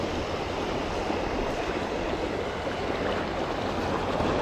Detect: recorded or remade recorded